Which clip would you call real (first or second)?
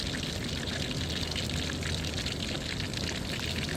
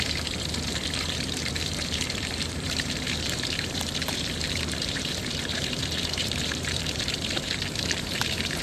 first